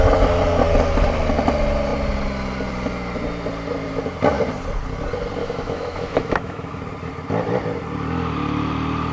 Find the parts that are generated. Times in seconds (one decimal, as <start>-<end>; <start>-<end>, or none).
5.4-6.8